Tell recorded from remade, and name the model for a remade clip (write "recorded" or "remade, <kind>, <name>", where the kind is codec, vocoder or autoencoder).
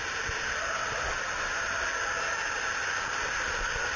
recorded